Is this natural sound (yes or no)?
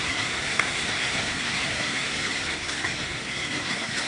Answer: no